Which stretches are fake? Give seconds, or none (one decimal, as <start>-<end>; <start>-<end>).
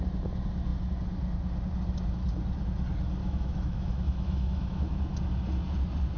3.2-5.0